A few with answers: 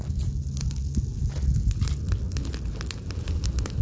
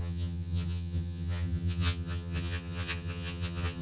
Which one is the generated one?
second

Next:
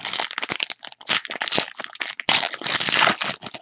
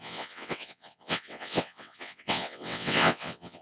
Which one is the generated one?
second